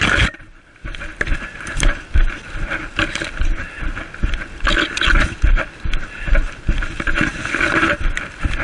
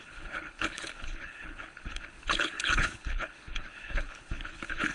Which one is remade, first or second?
second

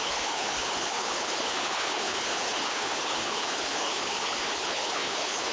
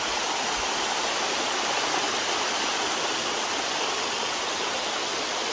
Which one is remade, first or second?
first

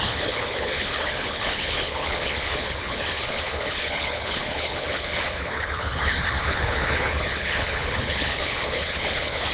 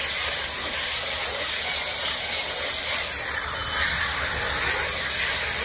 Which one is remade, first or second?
first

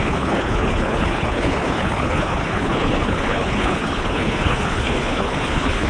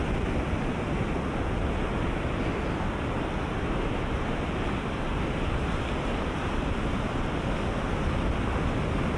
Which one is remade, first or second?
first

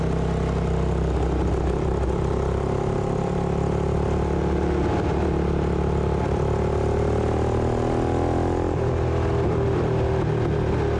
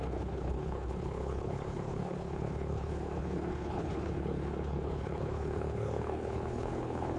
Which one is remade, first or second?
second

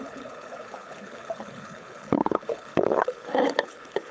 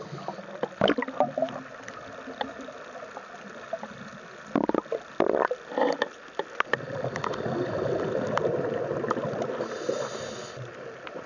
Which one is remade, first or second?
first